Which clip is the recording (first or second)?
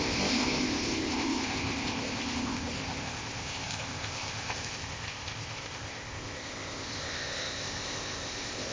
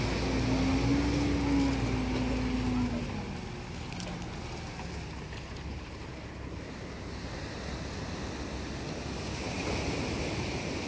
second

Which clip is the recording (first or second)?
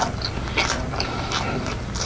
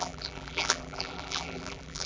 first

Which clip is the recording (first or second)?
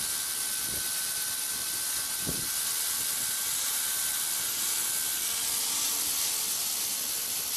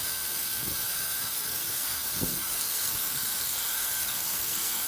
first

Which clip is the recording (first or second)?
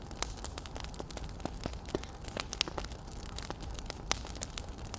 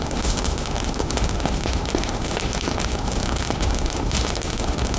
first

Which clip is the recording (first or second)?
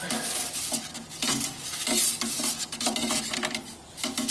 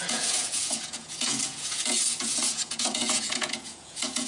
first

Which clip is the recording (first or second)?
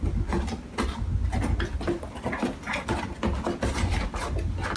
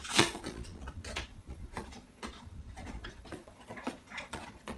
first